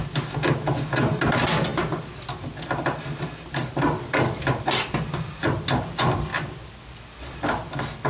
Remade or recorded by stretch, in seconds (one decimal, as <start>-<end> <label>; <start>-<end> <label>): 0.0-8.1 recorded